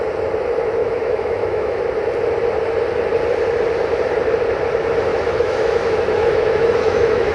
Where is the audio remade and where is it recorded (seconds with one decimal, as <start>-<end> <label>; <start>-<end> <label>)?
0.0-0.8 recorded; 0.8-1.8 remade; 1.8-5.1 recorded; 5.1-7.3 remade